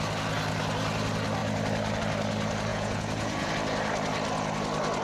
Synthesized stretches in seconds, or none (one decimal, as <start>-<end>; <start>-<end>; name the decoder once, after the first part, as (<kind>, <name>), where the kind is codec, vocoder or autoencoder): 2.7-3.5 (vocoder, Vocos)